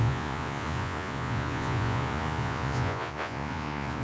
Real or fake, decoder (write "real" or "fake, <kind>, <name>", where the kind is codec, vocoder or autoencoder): fake, vocoder, Vocos